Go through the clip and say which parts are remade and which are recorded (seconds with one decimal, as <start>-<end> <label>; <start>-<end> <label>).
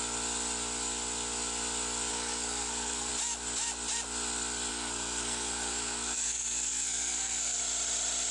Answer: 0.0-2.1 recorded; 2.1-3.1 remade; 3.1-4.7 recorded; 4.7-7.6 remade; 7.6-8.3 recorded